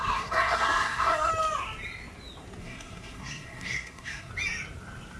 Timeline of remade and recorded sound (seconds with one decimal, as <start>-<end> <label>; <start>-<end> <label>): 0.0-1.3 remade; 1.3-2.6 recorded; 2.6-4.3 remade; 4.3-5.2 recorded